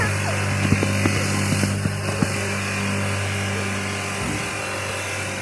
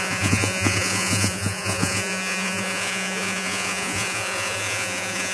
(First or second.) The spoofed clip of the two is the second